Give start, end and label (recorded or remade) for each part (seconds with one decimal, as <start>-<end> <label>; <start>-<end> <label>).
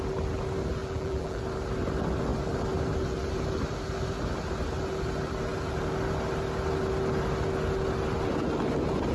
0.0-0.8 recorded; 0.8-1.4 remade; 1.4-9.1 recorded